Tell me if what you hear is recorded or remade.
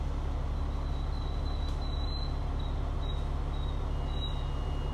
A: recorded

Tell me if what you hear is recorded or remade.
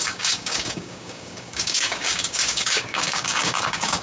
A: remade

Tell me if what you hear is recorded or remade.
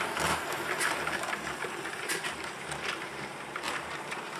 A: remade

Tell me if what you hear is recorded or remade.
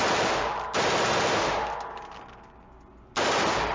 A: recorded